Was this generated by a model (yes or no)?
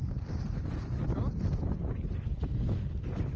no